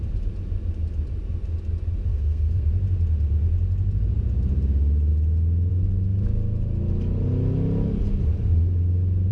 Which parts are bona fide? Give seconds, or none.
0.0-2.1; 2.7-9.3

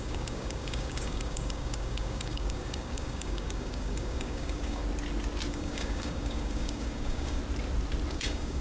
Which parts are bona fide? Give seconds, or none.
4.8-5.5; 7.4-8.1

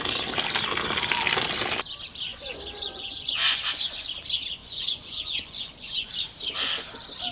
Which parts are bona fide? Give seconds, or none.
0.0-2.3; 4.1-4.6; 6.1-7.3